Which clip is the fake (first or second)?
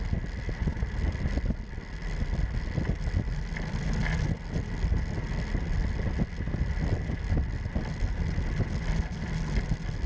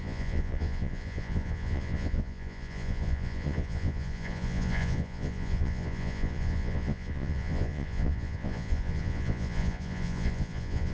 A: second